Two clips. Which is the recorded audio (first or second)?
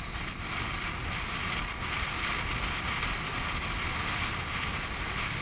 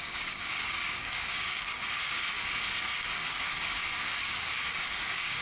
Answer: first